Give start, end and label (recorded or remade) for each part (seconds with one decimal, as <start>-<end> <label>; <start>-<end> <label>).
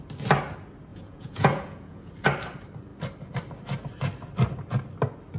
0.0-0.9 recorded; 0.9-2.1 remade; 2.1-5.4 recorded